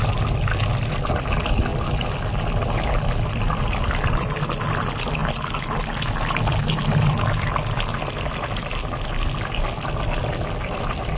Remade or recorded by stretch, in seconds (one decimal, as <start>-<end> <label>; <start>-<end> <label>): 0.0-11.2 recorded